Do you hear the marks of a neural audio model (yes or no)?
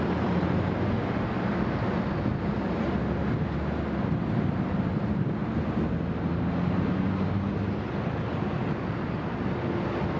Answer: no